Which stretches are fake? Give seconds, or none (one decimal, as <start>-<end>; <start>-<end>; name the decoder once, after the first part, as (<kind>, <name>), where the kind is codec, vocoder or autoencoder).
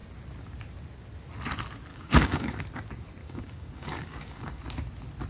1.9-2.6 (codec, DAC); 3.2-4.6